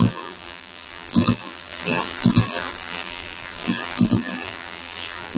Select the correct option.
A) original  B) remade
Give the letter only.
B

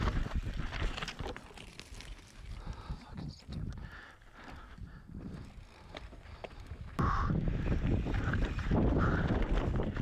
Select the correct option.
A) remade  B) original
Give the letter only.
A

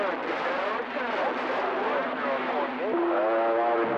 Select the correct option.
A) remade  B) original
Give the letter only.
B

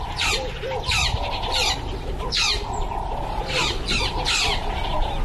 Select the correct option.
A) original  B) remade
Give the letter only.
A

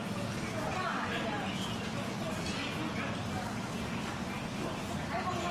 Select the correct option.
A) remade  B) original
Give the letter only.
B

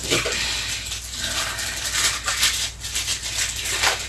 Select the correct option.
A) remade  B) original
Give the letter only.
A